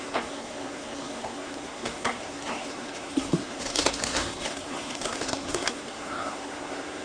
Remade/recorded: remade